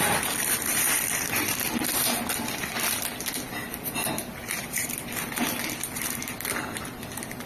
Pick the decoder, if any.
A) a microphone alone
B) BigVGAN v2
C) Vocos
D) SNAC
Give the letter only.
B